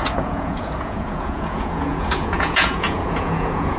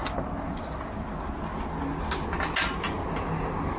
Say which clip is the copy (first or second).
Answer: first